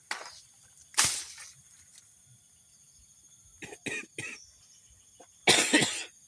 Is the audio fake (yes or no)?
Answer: no